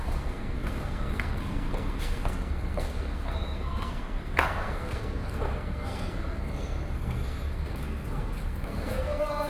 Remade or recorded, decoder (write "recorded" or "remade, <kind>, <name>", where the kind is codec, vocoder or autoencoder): remade, codec, SNAC